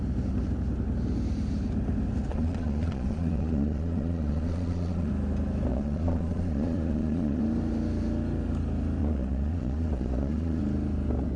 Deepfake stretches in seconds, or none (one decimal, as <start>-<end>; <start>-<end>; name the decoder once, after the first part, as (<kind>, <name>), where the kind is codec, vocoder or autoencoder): 2.3-5.1 (vocoder, Vocos); 5.7-7.4; 9.0-10.6